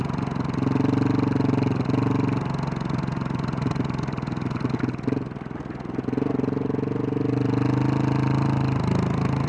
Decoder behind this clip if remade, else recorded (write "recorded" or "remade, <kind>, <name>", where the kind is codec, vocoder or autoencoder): recorded